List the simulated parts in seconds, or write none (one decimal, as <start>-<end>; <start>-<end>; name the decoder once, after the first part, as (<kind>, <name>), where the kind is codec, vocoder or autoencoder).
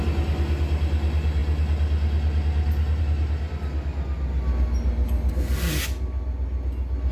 none